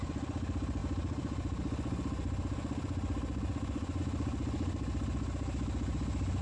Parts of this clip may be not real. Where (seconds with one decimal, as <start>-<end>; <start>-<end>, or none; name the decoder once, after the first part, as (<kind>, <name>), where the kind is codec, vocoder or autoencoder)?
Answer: none